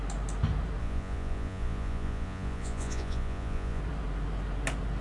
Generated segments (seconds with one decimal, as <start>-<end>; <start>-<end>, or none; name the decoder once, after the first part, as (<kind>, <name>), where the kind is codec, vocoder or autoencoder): 0.8-3.8 (vocoder, Vocos)